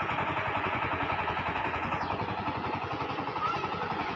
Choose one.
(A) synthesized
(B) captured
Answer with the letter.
A